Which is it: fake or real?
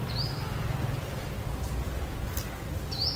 real